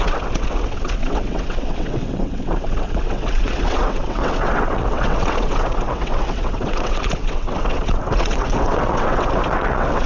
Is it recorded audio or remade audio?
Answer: remade